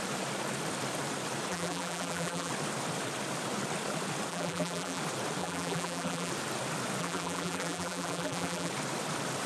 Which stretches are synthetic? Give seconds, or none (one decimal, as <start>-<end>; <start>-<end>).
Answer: 1.5-2.5; 4.3-5.0; 5.4-6.3; 7.0-8.7